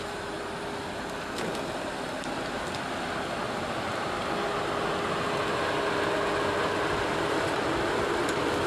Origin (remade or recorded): recorded